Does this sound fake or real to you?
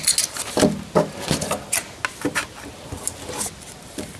real